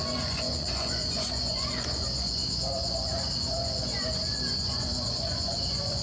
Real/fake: fake